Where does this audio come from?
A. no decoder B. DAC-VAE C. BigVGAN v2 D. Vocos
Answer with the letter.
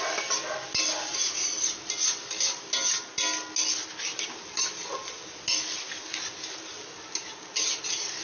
A